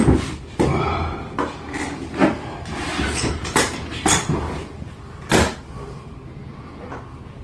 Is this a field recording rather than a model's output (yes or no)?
yes